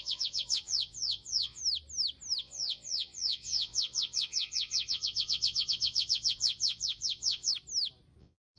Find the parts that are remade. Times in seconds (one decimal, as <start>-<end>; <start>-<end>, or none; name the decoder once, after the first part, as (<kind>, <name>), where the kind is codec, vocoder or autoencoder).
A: 0.0-1.6 (vocoder, Vocos); 2.4-7.5; 8.2-8.6